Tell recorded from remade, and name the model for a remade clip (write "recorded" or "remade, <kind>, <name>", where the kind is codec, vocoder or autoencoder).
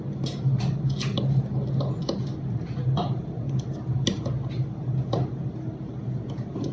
recorded